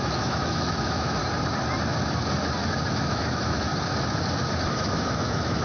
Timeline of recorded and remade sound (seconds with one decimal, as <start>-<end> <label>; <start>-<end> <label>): 0.0-1.2 remade; 1.2-2.9 recorded; 2.9-3.7 remade; 3.7-4.7 recorded; 4.7-5.6 remade